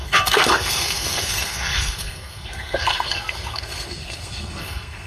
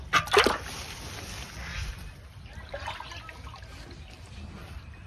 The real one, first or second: second